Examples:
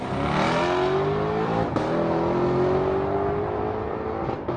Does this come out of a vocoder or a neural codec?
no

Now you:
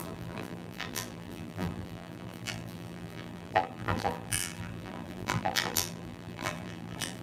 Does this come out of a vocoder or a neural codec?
yes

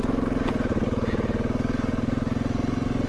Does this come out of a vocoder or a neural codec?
no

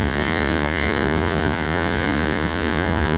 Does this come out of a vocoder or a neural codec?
yes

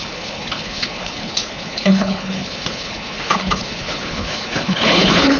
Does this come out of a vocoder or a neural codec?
yes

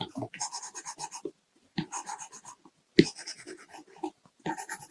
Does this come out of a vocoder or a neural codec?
no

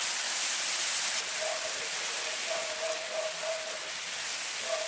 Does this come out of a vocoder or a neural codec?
no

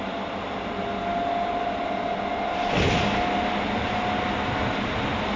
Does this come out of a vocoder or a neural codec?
no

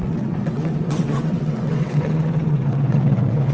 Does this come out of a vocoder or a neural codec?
yes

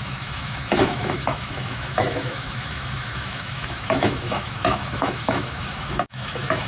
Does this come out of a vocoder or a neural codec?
yes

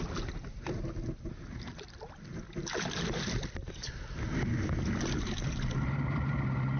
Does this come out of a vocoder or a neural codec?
no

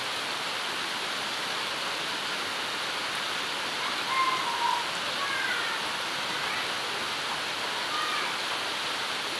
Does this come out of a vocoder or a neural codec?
no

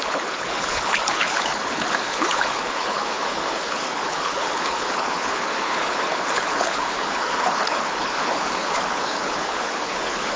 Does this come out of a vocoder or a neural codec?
yes